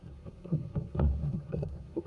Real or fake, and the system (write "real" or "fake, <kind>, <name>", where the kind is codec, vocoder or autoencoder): fake, codec, SNAC